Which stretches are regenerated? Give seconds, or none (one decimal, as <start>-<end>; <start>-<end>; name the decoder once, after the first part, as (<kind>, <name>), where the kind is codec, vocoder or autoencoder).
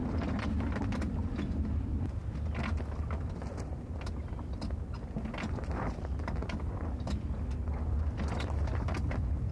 none